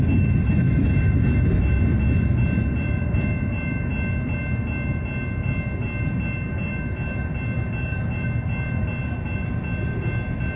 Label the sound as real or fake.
real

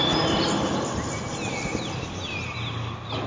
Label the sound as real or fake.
real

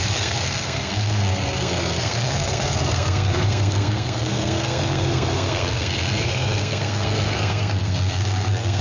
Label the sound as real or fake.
fake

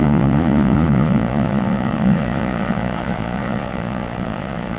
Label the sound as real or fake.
fake